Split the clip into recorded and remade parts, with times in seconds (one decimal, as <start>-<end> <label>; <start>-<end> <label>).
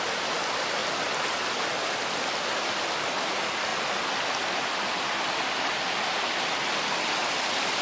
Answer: 0.0-0.8 remade; 0.8-2.6 recorded; 2.6-3.7 remade; 3.7-7.3 recorded; 7.3-7.8 remade